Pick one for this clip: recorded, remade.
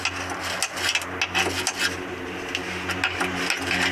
recorded